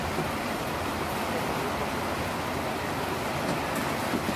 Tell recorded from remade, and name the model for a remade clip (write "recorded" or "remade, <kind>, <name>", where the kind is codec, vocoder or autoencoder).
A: recorded